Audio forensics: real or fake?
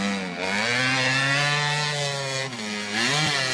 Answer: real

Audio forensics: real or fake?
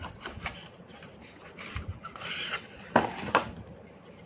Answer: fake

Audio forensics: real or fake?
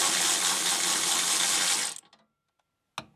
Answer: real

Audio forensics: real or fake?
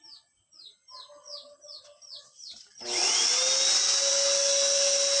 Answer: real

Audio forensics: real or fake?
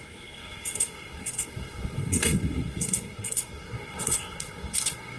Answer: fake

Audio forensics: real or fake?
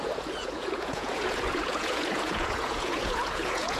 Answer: fake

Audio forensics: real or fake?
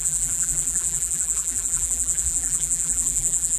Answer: fake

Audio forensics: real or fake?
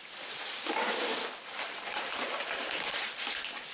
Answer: real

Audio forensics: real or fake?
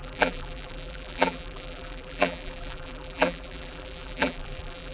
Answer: fake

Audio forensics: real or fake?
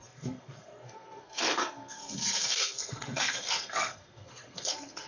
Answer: fake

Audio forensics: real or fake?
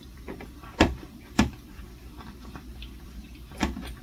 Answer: fake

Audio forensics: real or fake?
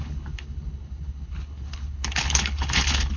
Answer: fake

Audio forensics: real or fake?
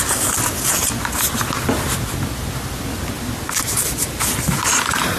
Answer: real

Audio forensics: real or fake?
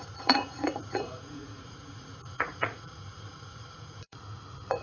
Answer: fake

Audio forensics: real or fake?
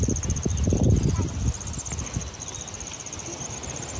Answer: real